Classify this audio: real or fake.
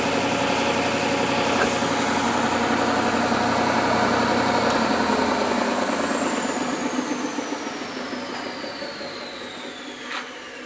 real